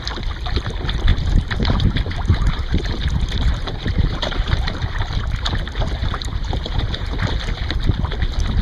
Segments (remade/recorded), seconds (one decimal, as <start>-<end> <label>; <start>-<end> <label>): 0.0-1.1 recorded; 1.1-4.9 remade; 4.9-6.0 recorded; 6.0-7.1 remade; 7.1-8.6 recorded